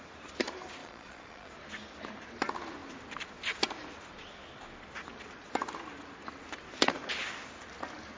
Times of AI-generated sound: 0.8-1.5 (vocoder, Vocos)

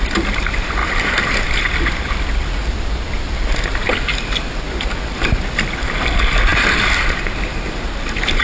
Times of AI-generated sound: none

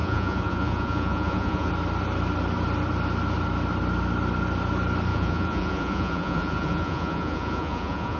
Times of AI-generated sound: 0.0-1.7 (vocoder, Vocos); 5.1-8.2

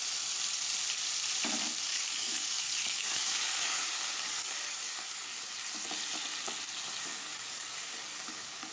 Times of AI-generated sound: 1.9-5.4 (codec, DAC); 7.1-8.7

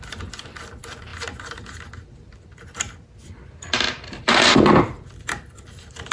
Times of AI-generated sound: 0.0-6.1 (vocoder, BigVGAN v2)

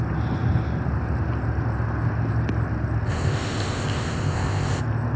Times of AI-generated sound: 3.1-4.8 (codec, ZipCodec)

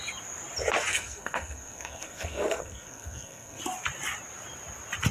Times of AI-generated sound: 0.9-3.6 (codec, SNAC)